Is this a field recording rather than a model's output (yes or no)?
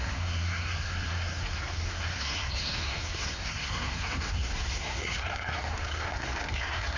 no